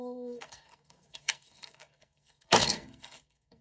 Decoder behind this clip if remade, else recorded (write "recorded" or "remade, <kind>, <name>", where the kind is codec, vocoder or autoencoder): remade, codec, SNAC